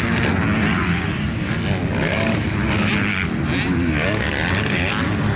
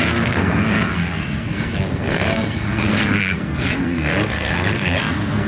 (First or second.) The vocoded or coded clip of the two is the second